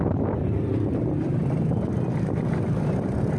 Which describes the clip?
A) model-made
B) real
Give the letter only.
B